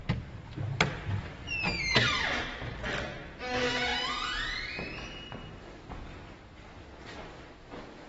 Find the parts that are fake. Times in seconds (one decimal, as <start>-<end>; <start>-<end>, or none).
none